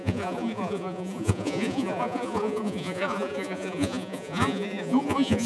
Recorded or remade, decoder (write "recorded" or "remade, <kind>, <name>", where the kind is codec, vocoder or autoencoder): remade, vocoder, Vocos